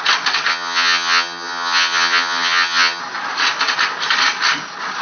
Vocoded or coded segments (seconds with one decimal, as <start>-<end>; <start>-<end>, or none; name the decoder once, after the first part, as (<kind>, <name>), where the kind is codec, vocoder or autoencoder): 0.5-3.0 (vocoder, HiFi-GAN)

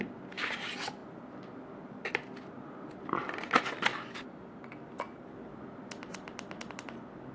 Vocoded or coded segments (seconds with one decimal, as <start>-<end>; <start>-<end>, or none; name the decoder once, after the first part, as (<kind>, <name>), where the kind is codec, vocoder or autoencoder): none

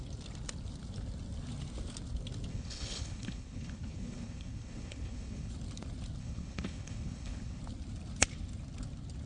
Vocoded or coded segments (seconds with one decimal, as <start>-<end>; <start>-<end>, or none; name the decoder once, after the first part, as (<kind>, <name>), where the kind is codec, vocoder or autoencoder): 2.5-5.5 (codec, HILCodec); 6.2-7.6

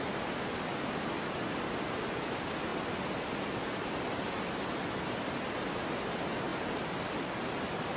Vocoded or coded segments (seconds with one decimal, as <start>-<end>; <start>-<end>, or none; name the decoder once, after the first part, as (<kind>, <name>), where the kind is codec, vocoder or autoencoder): none

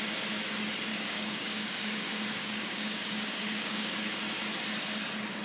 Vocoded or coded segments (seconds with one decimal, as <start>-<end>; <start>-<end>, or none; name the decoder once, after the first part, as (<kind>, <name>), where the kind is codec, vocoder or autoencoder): 0.9-4.1 (codec, DAC)